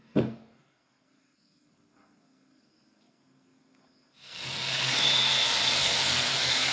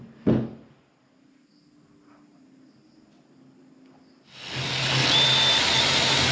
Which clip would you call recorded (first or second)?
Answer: second